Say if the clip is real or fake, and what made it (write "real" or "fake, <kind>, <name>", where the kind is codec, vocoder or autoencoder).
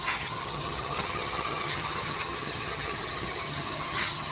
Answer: fake, vocoder, HiFi-GAN